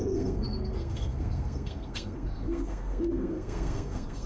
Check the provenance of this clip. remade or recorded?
remade